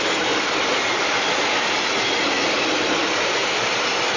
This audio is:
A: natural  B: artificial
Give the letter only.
A